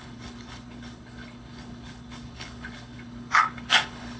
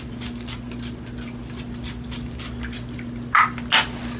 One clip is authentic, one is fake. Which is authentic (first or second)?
second